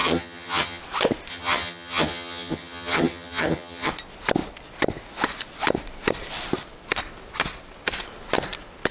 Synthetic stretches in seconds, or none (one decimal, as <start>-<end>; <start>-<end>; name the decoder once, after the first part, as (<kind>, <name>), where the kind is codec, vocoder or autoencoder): 0.0-0.8 (vocoder, HiFi-GAN); 1.3-3.9